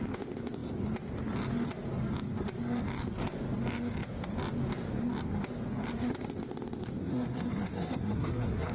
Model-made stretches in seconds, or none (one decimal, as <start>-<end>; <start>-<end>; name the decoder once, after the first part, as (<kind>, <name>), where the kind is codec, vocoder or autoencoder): 7.0-8.7 (codec, SNAC)

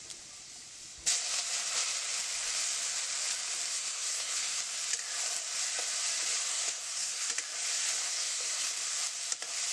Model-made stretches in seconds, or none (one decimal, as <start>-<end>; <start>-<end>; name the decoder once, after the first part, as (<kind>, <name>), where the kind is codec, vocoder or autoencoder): 3.7-4.6 (codec, SNAC); 6.5-7.3; 8.0-8.7

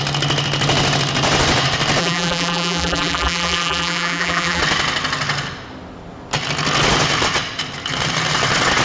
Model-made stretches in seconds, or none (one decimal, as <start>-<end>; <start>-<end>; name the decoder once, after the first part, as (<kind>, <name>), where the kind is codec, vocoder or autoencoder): 2.0-4.6 (vocoder, BigVGAN v2)

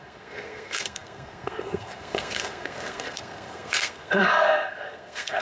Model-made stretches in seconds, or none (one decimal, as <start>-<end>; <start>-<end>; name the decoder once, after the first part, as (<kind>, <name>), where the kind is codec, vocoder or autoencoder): 0.0-5.4 (codec, SNAC)

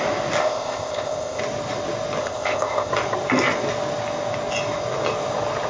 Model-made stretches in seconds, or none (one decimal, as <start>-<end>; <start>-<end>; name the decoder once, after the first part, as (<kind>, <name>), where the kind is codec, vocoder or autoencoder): 0.4-1.4 (codec, ZipCodec); 2.2-2.9

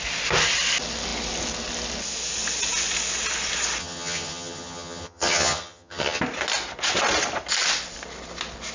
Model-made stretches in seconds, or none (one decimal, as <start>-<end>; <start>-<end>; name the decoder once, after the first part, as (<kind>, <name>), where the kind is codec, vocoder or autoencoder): 3.8-6.2 (vocoder, HiFi-GAN)

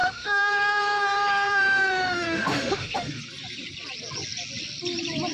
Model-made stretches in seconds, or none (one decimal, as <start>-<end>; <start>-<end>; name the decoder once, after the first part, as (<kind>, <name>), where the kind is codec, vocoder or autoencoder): 0.0-3.2 (autoencoder, DAC-VAE)

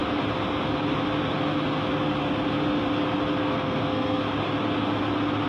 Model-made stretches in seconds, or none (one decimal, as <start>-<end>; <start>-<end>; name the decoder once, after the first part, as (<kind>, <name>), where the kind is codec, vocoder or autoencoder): 3.4-4.2 (codec, SNAC)